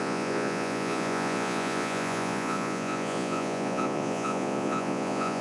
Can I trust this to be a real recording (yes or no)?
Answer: no